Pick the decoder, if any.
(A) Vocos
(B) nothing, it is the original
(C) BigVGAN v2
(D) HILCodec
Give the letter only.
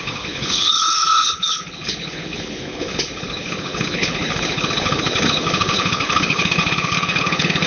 D